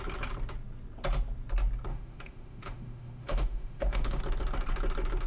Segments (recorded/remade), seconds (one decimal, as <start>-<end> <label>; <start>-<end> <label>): 0.0-1.9 recorded; 1.9-4.2 remade; 4.2-5.3 recorded